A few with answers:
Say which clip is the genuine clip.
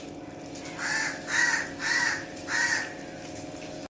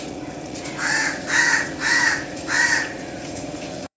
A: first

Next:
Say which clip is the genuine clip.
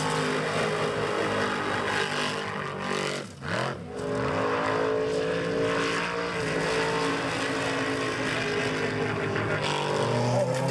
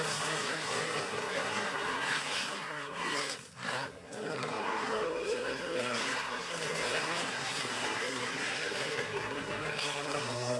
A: first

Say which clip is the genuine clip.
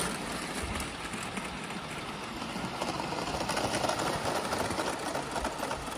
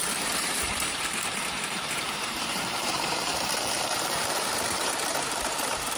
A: first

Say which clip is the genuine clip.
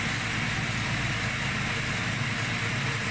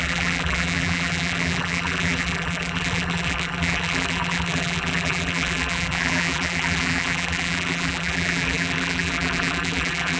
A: first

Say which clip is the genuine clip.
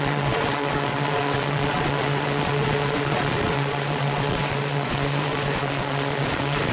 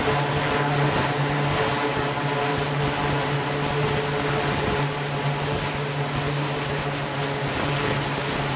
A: second